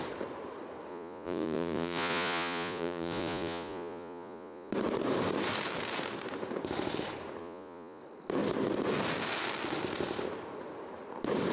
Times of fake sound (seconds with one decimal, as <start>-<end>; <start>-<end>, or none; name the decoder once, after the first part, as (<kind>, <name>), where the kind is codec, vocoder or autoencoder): 0.9-4.7 (vocoder, Vocos); 7.4-8.0